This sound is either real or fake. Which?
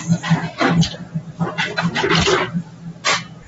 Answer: real